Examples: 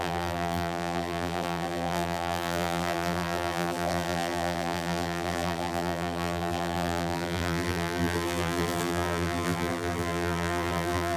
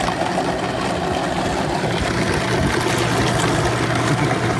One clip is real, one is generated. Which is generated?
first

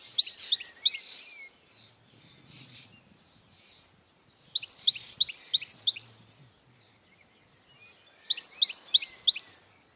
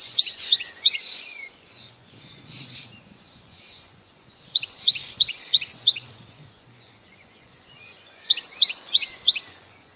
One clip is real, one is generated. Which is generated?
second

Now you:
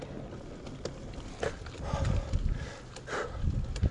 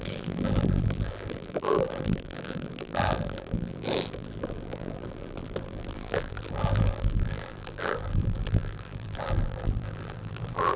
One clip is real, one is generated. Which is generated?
second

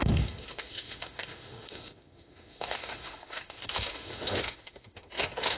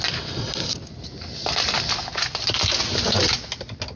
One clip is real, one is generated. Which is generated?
first